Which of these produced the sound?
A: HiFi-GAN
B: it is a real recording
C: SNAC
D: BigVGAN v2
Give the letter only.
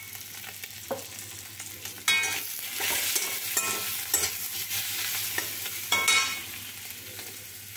B